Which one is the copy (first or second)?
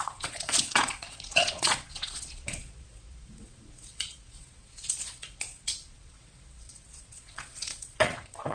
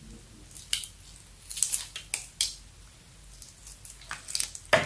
first